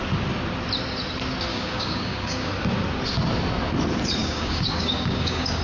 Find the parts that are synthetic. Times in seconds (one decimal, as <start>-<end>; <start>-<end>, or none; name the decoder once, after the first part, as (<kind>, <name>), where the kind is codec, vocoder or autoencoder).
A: 1.5-2.5 (codec, DAC); 4.2-5.6